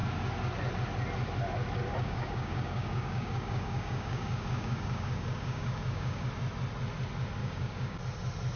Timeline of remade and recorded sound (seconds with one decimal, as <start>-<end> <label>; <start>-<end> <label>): 0.0-1.9 recorded; 1.9-6.3 remade; 6.3-7.4 recorded; 7.4-8.0 remade; 8.0-8.6 recorded